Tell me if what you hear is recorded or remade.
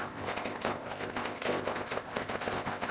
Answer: remade